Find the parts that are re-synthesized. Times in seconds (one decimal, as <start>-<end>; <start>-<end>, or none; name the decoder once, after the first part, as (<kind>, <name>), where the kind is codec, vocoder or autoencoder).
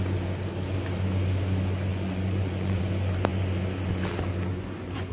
1.9-2.8 (vocoder, Vocos); 4.5-5.1